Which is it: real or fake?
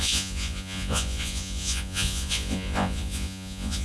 fake